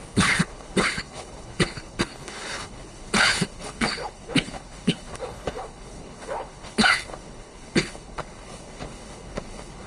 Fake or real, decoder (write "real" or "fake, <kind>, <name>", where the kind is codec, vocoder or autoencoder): fake, codec, HILCodec